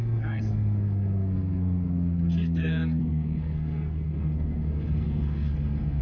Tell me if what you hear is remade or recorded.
remade